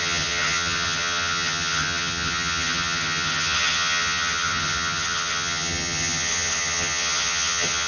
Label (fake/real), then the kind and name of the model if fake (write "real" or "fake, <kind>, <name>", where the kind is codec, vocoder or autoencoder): fake, vocoder, HiFi-GAN